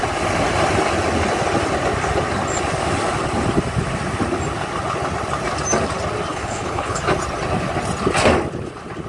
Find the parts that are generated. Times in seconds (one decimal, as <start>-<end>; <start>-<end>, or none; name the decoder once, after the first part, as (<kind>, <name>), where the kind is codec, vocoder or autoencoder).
6.3-7.0 (codec, HILCodec)